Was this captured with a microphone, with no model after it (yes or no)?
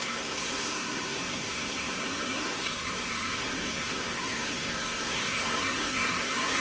no